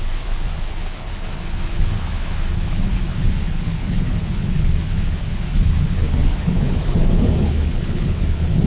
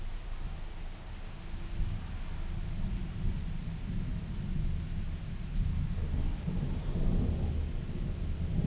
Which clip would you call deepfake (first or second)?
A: first